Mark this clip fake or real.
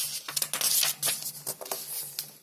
real